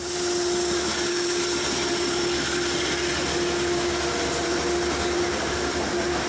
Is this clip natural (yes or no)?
yes